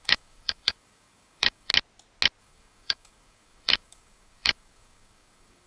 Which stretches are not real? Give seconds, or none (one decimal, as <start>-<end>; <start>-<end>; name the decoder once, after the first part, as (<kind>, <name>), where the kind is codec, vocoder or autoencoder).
0.0-1.7 (codec, DAC); 2.4-5.7